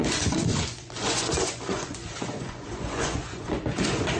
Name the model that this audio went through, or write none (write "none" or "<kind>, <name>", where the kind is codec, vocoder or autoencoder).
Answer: vocoder, Vocos